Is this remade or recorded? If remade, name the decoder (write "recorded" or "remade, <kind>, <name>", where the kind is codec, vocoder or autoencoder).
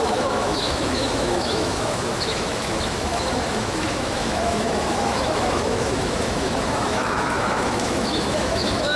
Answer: remade, autoencoder, DAC-VAE